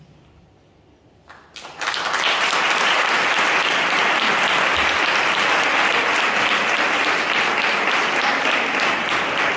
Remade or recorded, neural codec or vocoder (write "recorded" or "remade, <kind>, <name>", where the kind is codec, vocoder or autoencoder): recorded